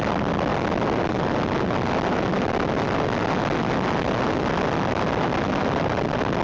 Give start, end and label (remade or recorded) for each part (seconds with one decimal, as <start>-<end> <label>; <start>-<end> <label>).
0.0-6.4 recorded